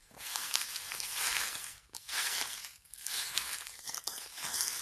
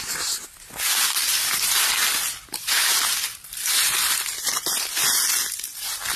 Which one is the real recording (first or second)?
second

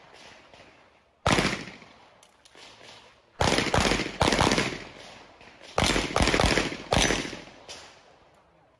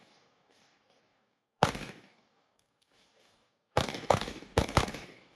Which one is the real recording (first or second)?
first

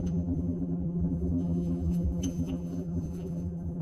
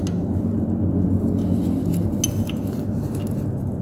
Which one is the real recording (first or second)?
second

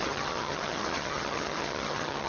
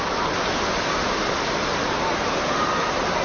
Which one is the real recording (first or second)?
second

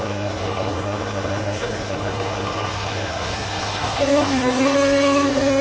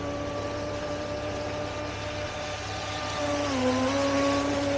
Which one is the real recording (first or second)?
second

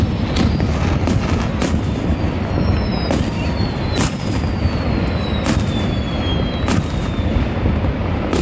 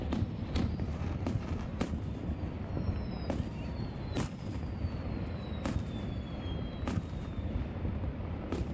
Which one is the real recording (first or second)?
first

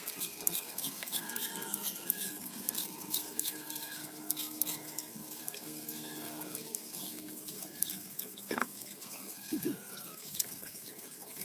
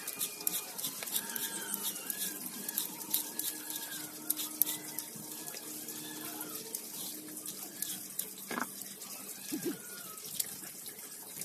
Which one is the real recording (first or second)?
second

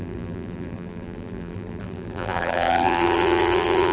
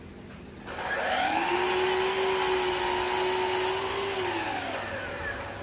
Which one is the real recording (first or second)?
second